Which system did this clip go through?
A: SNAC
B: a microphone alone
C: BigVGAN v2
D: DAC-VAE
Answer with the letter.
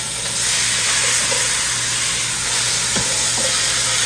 B